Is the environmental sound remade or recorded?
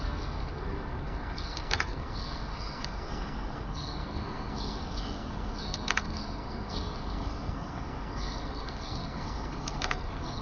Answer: remade